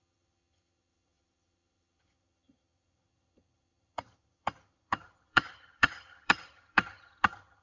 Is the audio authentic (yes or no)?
no